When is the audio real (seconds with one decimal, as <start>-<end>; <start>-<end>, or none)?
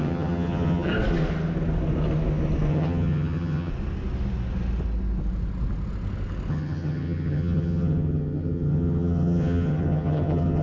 0.9-2.7; 3.7-6.5